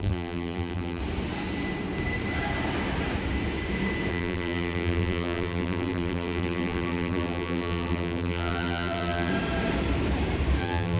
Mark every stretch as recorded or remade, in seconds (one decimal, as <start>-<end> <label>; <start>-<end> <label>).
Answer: 0.0-1.0 remade; 1.0-4.1 recorded; 4.1-9.3 remade; 9.3-10.6 recorded; 10.6-11.0 remade